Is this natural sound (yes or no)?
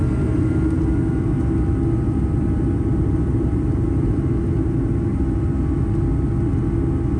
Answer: yes